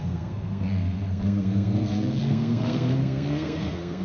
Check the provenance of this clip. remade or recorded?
remade